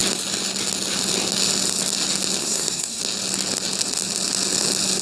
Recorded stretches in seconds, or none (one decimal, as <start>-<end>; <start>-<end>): 0.0-2.4; 3.0-5.0